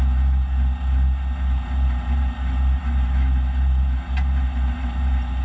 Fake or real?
real